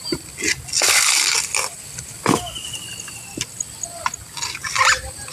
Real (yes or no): yes